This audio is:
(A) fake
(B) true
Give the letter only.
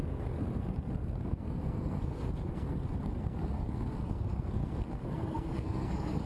A